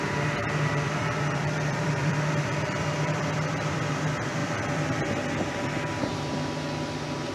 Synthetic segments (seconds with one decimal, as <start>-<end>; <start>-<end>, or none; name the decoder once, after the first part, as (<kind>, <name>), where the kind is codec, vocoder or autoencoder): 0.4-3.8 (vocoder, BigVGAN v2); 4.4-5.0